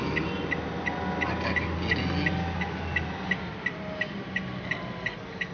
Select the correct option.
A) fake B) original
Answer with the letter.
B